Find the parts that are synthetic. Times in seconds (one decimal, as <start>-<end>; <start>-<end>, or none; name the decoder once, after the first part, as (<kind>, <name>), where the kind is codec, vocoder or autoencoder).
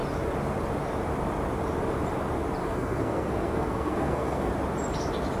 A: 2.6-4.5 (codec, SNAC)